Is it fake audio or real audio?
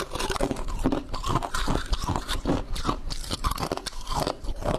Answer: fake